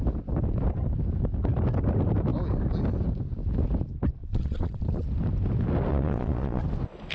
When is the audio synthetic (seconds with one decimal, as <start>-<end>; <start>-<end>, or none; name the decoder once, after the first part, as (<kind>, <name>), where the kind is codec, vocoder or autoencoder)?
4.2-4.8 (vocoder, Vocos); 5.9-6.6

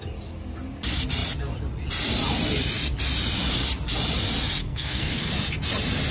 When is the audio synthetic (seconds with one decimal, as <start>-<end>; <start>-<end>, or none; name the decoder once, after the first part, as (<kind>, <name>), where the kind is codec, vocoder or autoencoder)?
4.6-5.3 (codec, SNAC)

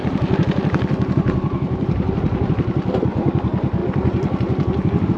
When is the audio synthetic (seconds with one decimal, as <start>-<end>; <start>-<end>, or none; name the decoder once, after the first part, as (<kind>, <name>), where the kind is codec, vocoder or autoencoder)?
none

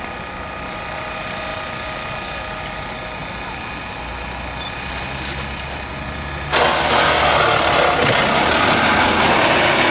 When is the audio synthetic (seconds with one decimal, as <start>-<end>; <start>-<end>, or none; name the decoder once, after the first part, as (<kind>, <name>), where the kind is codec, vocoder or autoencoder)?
none

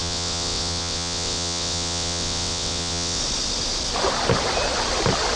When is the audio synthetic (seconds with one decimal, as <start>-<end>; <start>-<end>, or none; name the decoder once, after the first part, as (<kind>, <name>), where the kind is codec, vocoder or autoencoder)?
0.0-3.2 (vocoder, WaveNeXt)

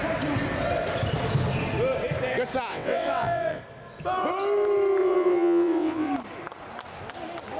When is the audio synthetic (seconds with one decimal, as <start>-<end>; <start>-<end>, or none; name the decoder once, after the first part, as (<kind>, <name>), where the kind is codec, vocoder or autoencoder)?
2.7-3.6 (vocoder, WaveNeXt); 5.0-6.1

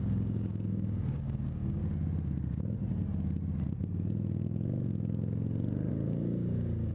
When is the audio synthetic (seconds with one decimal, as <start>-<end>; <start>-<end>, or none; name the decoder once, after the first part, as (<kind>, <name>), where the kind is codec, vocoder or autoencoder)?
0.0-1.8 (codec, DAC); 5.9-6.9

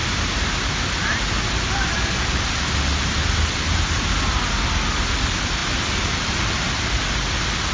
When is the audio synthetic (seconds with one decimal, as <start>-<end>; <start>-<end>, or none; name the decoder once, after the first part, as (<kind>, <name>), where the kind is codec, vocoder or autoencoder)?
none